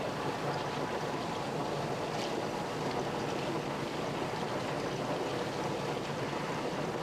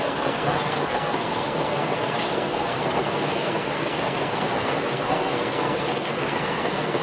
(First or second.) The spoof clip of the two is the second